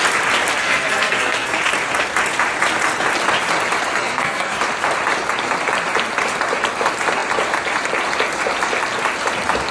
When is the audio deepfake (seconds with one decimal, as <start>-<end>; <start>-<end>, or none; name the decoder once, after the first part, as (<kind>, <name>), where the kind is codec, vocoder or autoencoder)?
0.6-1.6 (codec, SNAC); 3.9-4.6